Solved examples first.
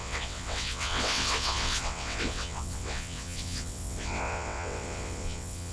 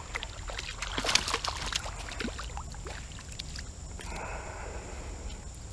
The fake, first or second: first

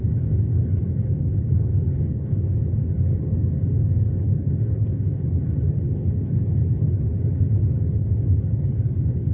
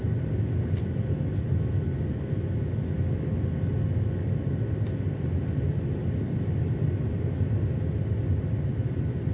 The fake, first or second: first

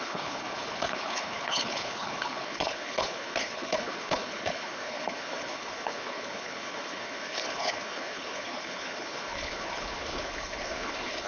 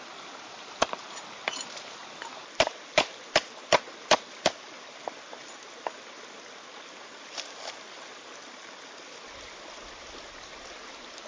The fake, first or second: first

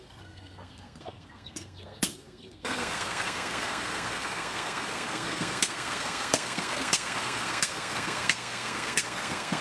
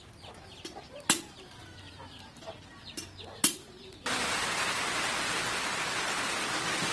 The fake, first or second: first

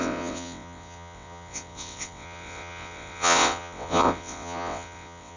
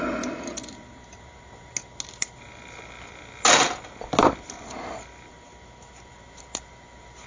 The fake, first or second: first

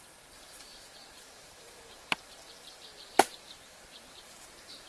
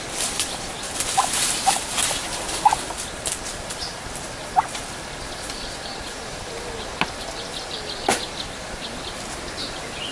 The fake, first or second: first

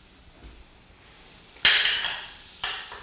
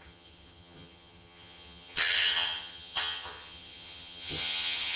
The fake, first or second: second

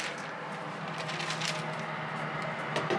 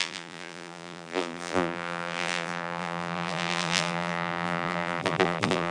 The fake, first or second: second